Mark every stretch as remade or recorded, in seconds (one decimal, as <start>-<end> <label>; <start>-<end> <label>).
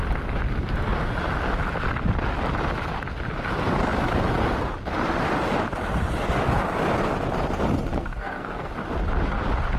0.0-7.9 recorded; 7.9-8.7 remade; 8.7-9.8 recorded